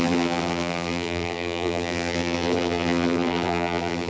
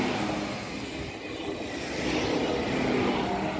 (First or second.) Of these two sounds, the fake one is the first